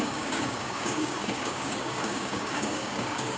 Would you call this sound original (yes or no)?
no